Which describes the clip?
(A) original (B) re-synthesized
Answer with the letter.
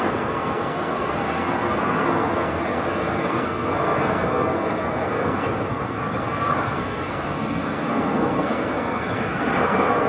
B